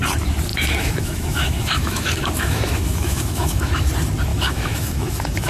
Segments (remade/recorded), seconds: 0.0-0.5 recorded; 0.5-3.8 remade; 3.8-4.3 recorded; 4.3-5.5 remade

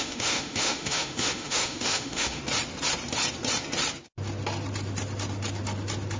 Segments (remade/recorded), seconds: 0.0-2.4 remade; 2.4-6.2 recorded

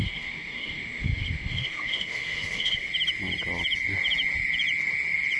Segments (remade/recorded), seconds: 0.0-2.9 remade; 2.9-5.4 recorded